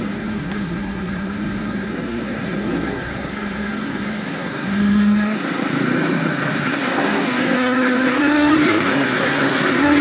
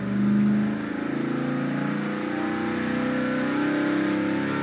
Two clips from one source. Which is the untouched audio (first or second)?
second